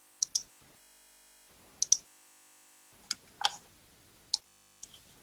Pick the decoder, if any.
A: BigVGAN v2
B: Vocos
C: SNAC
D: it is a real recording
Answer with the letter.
D